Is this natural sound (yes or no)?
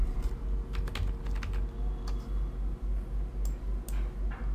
yes